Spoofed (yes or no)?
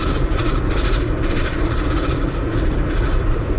yes